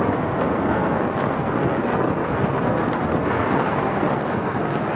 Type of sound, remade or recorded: remade